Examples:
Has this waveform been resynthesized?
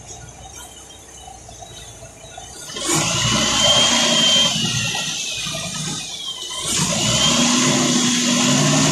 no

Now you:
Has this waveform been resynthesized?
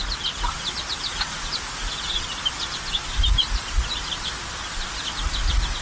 no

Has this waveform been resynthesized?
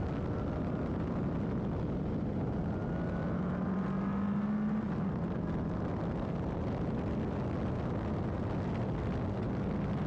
no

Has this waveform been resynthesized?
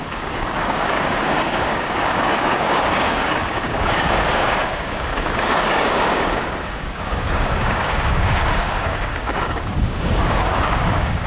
yes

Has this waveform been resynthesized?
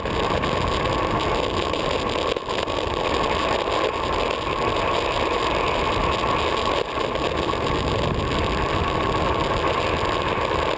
no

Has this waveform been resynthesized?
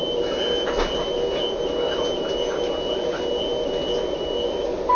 no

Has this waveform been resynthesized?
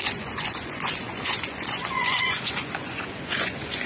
yes